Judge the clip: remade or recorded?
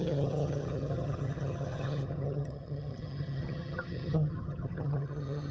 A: remade